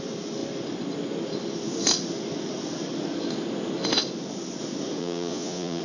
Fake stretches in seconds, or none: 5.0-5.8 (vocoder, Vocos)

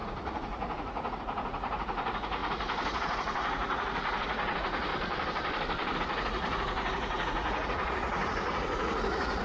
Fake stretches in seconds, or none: 0.0-4.9 (vocoder, Vocos); 6.0-9.4

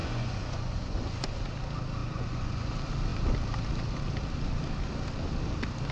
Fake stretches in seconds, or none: 0.0-1.4 (vocoder, Vocos); 2.0-2.7

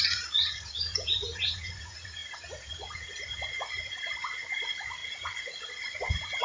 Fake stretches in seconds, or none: 0.0-6.4 (vocoder, Vocos)